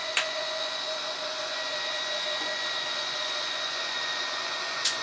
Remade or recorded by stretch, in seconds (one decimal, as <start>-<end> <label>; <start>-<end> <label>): 0.0-5.0 remade